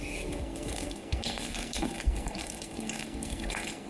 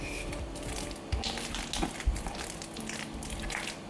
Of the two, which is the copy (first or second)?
first